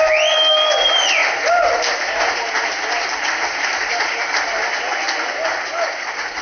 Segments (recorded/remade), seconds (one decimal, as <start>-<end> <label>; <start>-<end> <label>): 0.0-6.4 recorded